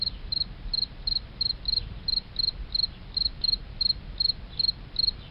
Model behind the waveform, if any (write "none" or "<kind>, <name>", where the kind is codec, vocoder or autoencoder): vocoder, BigVGAN v2